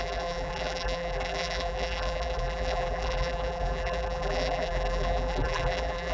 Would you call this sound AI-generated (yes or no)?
yes